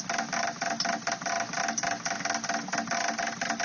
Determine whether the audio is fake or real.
real